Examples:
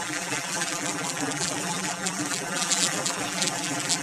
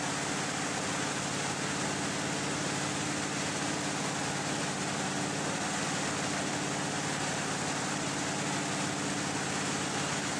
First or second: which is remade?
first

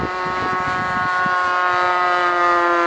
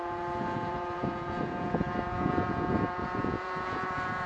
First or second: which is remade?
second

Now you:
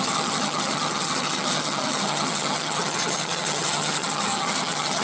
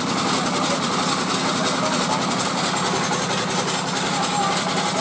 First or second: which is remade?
first